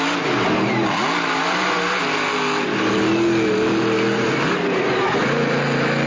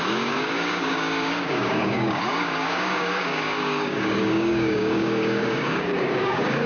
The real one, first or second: first